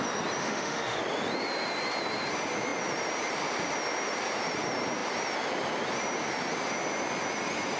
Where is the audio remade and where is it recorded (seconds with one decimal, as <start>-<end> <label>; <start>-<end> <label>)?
0.0-0.4 recorded; 0.4-1.0 remade; 1.0-7.8 recorded